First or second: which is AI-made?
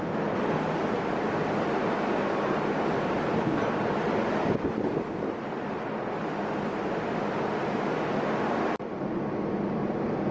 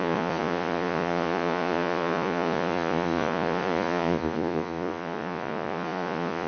second